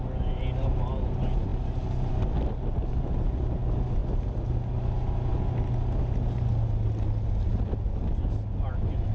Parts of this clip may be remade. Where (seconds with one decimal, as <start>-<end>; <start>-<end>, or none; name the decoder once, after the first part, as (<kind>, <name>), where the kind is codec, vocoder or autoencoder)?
none